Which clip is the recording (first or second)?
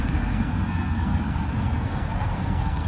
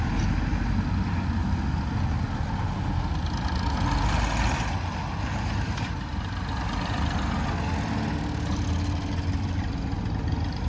second